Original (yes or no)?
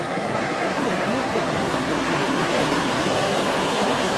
no